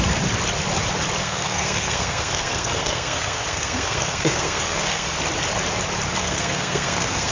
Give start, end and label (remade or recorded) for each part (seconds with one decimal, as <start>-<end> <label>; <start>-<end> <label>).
0.0-1.2 recorded; 1.2-5.2 remade; 5.2-6.2 recorded; 6.2-7.3 remade